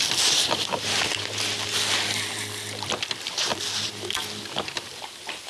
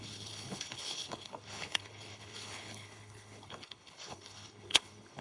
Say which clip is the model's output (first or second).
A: second